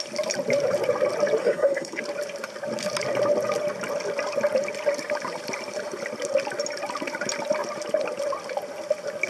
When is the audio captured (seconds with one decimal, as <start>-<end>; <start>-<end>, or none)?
0.0-1.4; 2.0-9.3